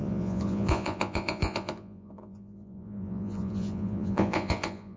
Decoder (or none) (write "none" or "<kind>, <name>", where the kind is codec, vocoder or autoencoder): vocoder, Vocos